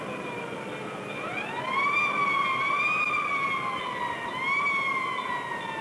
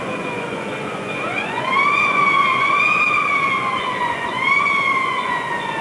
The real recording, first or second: first